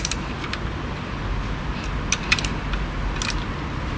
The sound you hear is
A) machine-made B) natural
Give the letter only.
B